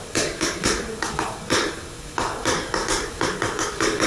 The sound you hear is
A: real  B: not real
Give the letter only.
B